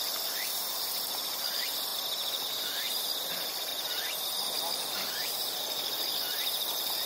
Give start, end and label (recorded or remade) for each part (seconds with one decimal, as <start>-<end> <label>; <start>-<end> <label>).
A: 0.0-1.9 remade; 1.9-2.6 recorded; 2.6-3.7 remade; 3.7-5.1 recorded; 5.1-7.1 remade